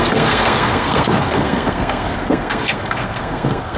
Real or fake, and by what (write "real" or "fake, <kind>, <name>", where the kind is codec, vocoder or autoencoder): fake, codec, SNAC